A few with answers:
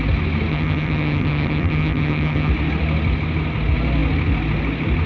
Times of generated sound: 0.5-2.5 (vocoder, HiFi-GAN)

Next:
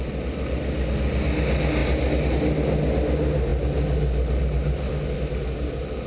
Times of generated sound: none

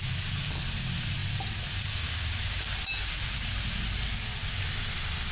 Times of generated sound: none

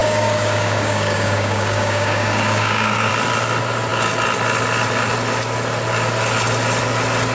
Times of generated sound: 0.0-3.1 (codec, DAC)

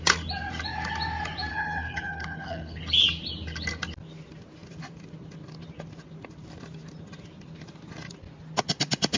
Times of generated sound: 1.5-2.8 (codec, HILCodec)

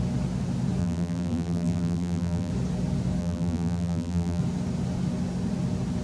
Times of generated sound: 0.8-2.5 (vocoder, BigVGAN v2); 3.2-4.4

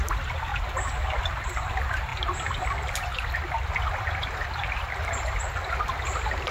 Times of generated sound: 0.0-0.5 (vocoder, BigVGAN v2); 1.2-2.1; 5.2-6.5